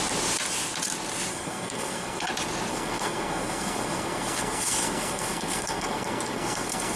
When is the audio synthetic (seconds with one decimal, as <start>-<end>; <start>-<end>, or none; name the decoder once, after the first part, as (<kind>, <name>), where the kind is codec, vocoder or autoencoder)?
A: 1.3-2.3 (codec, SNAC); 2.7-7.0